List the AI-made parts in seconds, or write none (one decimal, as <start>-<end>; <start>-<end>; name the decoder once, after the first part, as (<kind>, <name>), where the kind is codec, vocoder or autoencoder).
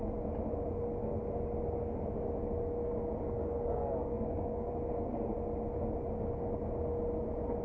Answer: 3.4-4.7 (codec, DAC)